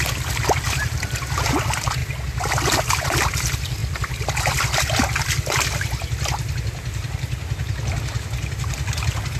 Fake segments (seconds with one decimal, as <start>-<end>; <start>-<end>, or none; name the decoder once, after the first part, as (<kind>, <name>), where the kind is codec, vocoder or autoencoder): none